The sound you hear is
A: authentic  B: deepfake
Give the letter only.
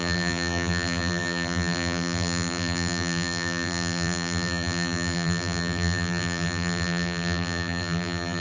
B